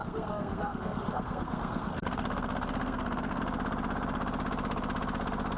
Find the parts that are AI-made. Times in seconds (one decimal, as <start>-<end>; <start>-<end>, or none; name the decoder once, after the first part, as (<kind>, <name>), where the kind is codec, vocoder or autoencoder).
0.0-3.4 (codec, SNAC)